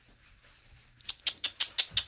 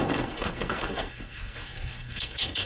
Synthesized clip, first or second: second